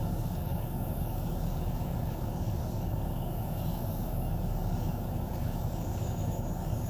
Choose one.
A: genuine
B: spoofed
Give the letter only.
B